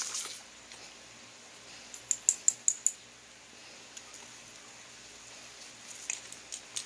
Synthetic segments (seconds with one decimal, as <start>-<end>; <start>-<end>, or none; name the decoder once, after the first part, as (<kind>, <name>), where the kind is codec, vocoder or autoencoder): none